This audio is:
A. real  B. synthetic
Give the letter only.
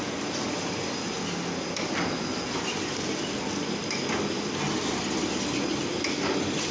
A